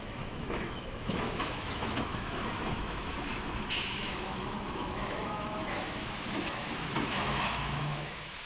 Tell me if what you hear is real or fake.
fake